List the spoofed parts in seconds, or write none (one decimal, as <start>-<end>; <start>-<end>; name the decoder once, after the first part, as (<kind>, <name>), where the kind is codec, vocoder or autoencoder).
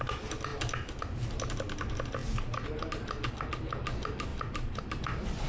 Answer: 4.3-5.0 (vocoder, BigVGAN v2)